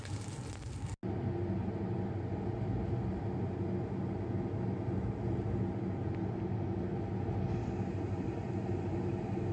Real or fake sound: real